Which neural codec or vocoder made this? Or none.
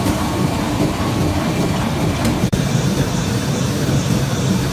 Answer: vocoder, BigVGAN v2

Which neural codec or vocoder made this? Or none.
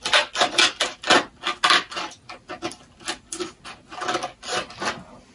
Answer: none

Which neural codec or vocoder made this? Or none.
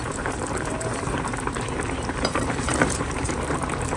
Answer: vocoder, BigVGAN v2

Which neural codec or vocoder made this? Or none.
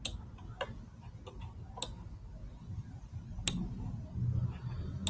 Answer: none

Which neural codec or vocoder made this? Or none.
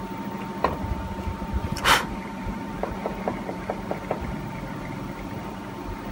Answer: vocoder, BigVGAN v2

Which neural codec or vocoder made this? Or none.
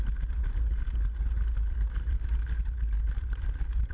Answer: none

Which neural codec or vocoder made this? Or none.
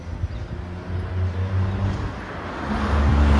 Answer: none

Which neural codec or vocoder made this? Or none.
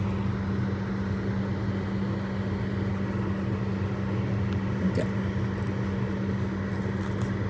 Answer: none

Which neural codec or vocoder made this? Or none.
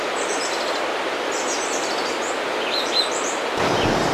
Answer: vocoder, BigVGAN v2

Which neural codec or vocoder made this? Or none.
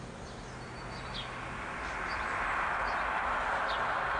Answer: none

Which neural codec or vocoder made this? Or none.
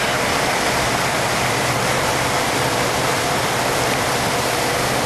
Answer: vocoder, BigVGAN v2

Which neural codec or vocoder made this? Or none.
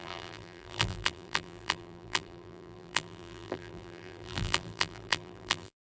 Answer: vocoder, BigVGAN v2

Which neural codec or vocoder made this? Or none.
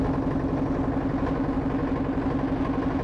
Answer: none